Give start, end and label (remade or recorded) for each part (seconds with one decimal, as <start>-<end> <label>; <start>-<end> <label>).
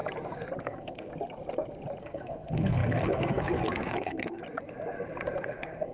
0.0-0.6 recorded; 0.6-1.1 remade; 1.1-2.0 recorded; 2.0-4.4 remade; 4.4-5.4 recorded; 5.4-5.9 remade